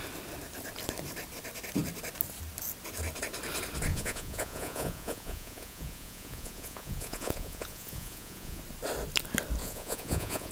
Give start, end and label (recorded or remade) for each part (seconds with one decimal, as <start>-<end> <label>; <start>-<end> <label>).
0.0-3.9 recorded; 3.9-8.6 remade; 8.6-9.6 recorded; 9.6-10.5 remade